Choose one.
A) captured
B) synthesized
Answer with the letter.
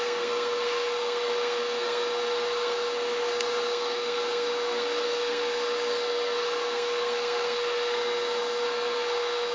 B